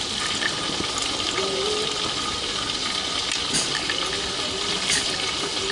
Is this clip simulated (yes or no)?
no